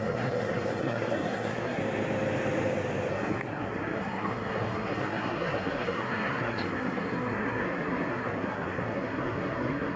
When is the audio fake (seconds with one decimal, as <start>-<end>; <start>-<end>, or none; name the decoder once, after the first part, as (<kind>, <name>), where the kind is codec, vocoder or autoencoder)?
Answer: 0.0-1.8 (codec, SNAC); 3.1-10.0